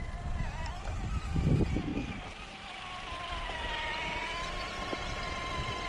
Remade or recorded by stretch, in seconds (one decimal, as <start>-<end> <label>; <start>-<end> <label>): 0.0-5.9 recorded